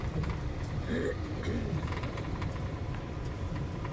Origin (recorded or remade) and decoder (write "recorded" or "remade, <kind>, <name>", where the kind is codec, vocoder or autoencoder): remade, vocoder, BigVGAN v2